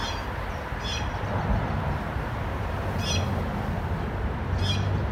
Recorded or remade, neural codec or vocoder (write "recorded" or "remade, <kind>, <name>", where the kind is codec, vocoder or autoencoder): recorded